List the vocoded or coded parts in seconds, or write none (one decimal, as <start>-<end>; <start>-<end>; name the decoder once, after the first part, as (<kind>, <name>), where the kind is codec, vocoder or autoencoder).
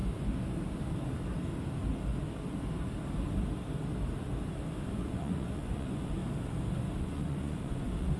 4.9-6.2 (vocoder, Vocos); 7.0-8.2